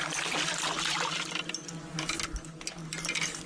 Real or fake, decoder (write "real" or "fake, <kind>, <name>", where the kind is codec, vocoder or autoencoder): real